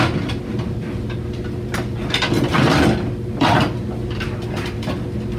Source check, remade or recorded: recorded